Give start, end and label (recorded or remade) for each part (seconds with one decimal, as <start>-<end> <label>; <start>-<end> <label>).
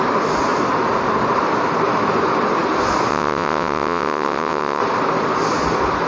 0.0-3.1 recorded; 3.1-4.8 remade; 4.8-6.1 recorded